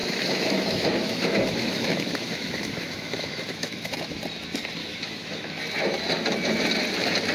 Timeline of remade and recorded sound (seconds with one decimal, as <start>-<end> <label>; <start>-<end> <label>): 0.0-4.2 remade; 4.2-4.8 recorded; 4.8-5.6 remade; 5.6-7.3 recorded